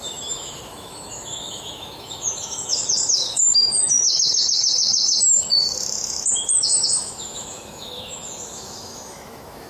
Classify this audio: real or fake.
fake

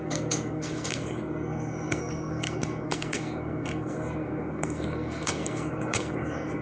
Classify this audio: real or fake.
fake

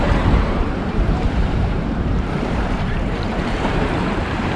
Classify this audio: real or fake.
fake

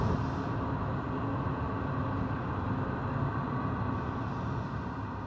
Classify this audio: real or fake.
real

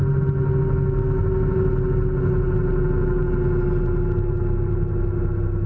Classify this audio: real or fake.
real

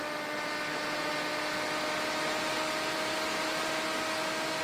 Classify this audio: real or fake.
real